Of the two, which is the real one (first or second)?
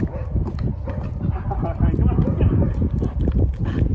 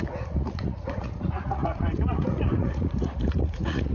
first